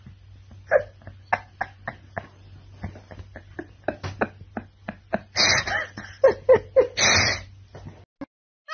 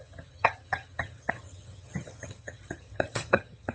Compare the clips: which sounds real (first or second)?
first